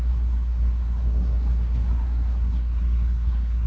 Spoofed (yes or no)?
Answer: yes